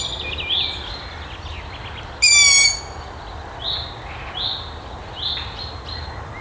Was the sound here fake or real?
real